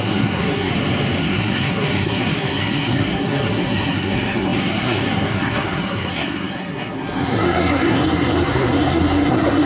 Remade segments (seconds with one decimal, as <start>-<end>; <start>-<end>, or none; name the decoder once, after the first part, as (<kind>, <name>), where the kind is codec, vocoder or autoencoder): 0.0-0.7 (codec, SNAC); 1.2-9.7